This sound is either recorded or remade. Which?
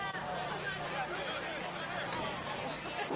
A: recorded